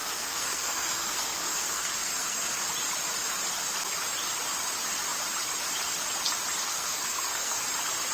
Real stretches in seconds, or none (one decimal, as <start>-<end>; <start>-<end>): 2.6-6.6; 7.6-8.1